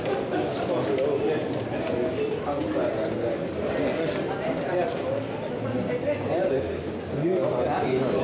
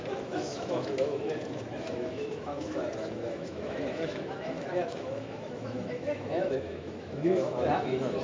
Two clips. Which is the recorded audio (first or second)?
first